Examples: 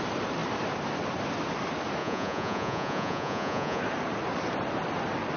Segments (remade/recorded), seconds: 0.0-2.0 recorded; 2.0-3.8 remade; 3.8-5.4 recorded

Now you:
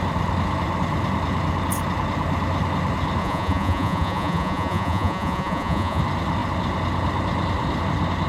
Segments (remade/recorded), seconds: 0.0-3.2 recorded; 3.2-6.0 remade; 6.0-8.3 recorded

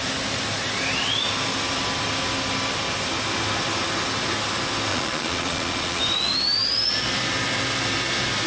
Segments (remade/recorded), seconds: 0.0-4.9 recorded; 4.9-6.0 remade; 6.0-8.5 recorded

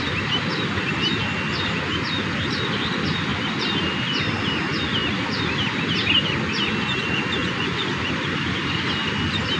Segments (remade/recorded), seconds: 0.0-7.4 recorded; 7.4-7.9 remade; 7.9-9.6 recorded

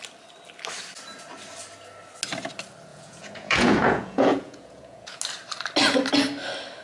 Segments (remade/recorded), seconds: 0.0-2.9 recorded; 2.9-5.2 remade; 5.2-6.8 recorded

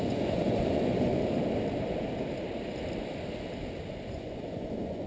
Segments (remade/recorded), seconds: 0.0-1.1 remade; 1.1-4.1 recorded; 4.1-5.1 remade

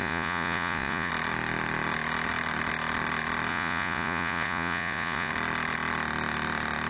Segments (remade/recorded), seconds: 0.0-1.1 remade; 1.1-3.5 recorded; 3.5-5.3 remade; 5.3-6.9 recorded